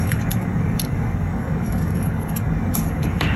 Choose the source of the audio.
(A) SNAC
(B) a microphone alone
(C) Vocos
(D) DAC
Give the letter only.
D